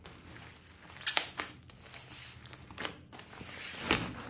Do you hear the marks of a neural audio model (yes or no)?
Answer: no